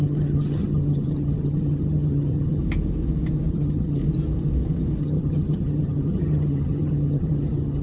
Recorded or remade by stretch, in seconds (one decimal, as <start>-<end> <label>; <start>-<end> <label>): 0.0-2.6 remade; 2.6-3.5 recorded; 3.5-4.0 remade; 4.0-5.0 recorded; 5.0-7.8 remade

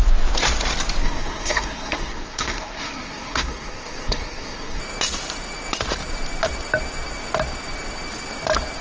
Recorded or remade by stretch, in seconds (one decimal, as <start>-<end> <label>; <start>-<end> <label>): 0.0-1.0 recorded; 1.0-4.8 remade; 4.8-8.8 recorded

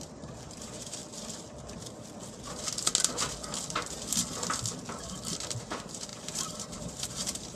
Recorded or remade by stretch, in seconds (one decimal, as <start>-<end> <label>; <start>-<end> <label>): 0.0-1.0 remade; 1.0-5.0 recorded; 5.0-7.6 remade

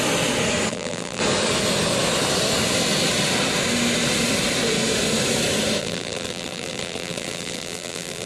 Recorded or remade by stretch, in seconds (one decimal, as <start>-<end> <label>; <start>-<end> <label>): 0.0-0.7 recorded; 0.7-1.2 remade; 1.2-5.8 recorded; 5.8-8.3 remade

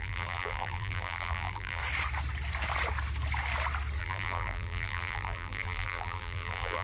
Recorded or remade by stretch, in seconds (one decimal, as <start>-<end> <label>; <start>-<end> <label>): 0.0-1.8 remade; 1.8-4.0 recorded; 4.0-6.8 remade